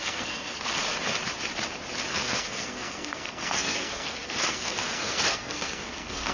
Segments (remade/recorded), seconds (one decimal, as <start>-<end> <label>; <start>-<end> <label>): 0.0-0.8 remade; 0.8-2.1 recorded; 2.1-6.3 remade